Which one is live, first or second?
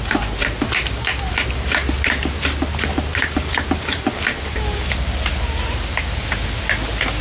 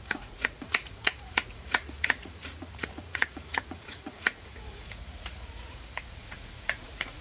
first